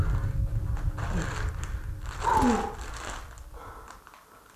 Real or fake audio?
real